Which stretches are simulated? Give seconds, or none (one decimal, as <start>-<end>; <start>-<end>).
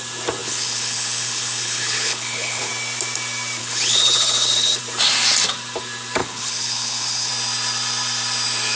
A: 0.4-2.7; 3.6-4.8; 6.2-7.3